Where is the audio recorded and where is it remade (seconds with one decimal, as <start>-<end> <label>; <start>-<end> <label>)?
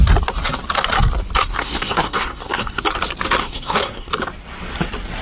0.0-1.4 recorded; 1.4-2.8 remade; 2.8-3.4 recorded; 3.4-4.1 remade; 4.1-5.2 recorded